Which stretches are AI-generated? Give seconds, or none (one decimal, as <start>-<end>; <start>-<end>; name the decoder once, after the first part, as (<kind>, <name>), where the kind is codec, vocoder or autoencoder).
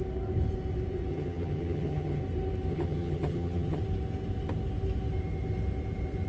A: 1.1-2.2 (vocoder, HiFi-GAN); 2.7-3.8